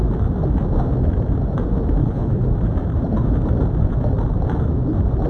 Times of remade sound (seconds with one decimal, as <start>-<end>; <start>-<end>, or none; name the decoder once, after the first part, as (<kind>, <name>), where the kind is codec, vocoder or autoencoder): 2.0-2.5 (codec, HILCodec)